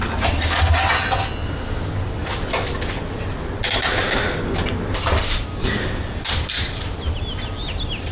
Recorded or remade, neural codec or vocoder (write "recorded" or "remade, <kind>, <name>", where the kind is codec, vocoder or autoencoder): recorded